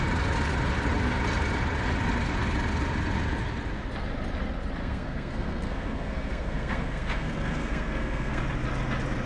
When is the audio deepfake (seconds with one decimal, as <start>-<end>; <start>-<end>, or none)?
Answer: 4.8-8.4